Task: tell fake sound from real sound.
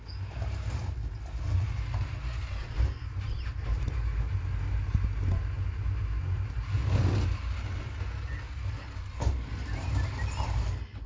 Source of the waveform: real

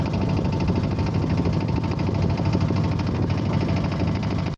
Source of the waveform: real